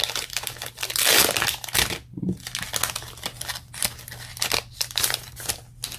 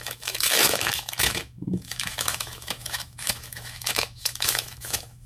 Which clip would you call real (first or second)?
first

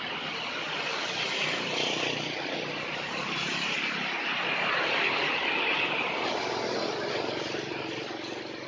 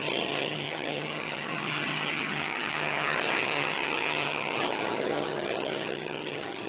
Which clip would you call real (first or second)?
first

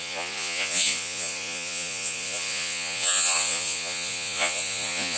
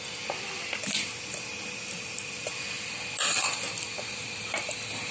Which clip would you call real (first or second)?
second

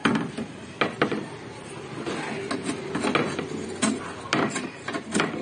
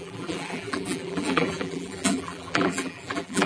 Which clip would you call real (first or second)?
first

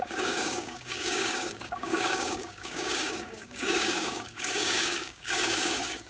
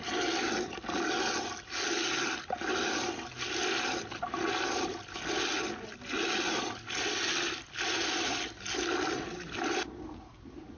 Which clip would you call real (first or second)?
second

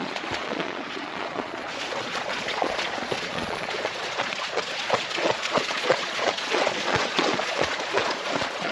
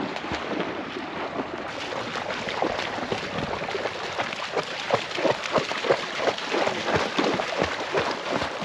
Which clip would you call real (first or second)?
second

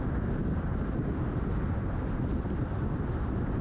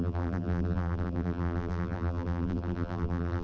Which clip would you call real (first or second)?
first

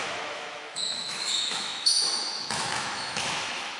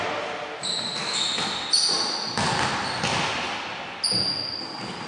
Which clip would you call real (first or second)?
second